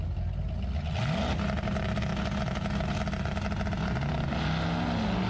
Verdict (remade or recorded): recorded